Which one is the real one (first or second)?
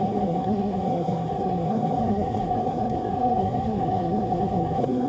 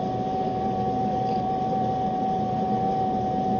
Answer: second